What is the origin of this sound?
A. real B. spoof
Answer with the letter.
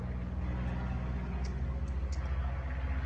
A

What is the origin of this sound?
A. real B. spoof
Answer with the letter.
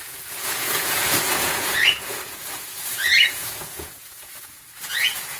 B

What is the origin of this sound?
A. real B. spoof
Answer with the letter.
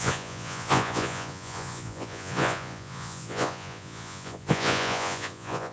B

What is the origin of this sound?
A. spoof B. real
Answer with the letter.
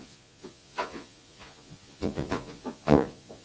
A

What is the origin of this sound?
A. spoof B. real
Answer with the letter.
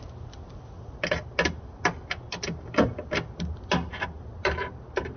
B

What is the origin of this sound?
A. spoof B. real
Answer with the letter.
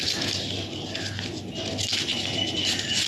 B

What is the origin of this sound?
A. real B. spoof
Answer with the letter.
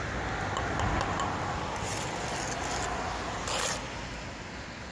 A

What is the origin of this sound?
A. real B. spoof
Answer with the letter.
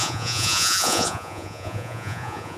B